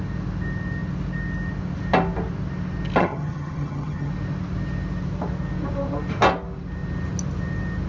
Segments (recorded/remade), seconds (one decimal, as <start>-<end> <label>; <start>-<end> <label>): 0.0-3.0 recorded; 3.0-4.1 remade; 4.1-7.9 recorded